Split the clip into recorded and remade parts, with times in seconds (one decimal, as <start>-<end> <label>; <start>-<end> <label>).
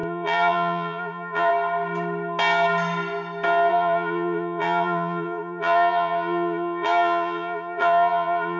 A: 0.0-1.5 remade; 1.5-3.7 recorded; 3.7-8.6 remade